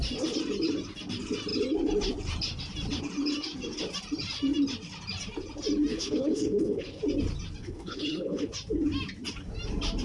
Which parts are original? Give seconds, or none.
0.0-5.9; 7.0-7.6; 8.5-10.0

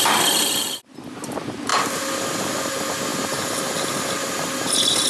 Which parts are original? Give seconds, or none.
0.0-5.1